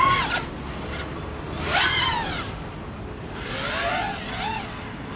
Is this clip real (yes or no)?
yes